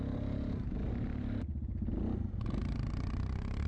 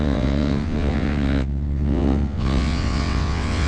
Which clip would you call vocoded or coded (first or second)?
second